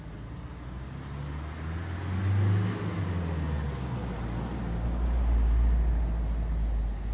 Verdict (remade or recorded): recorded